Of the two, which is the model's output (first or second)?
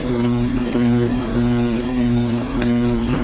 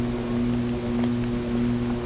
first